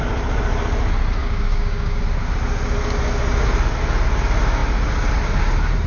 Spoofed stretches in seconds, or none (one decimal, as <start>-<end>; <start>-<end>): 1.2-2.0